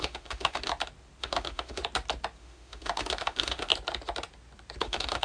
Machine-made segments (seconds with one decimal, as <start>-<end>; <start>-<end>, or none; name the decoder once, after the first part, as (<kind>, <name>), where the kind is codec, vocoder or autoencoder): 0.0-0.7 (autoencoder, DAC-VAE); 1.2-1.8; 2.4-3.7; 4.8-5.2